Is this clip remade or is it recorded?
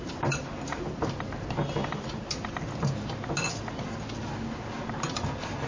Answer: recorded